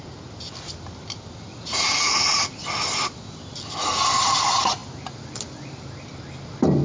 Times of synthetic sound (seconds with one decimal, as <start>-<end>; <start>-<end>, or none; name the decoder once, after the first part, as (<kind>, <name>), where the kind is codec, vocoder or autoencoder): 1.5-2.6 (vocoder, Vocos)